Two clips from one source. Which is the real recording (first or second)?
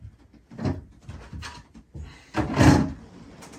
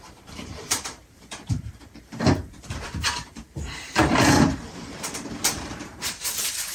first